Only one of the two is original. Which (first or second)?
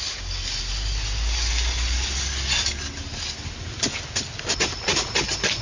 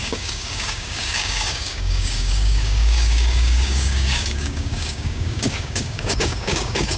first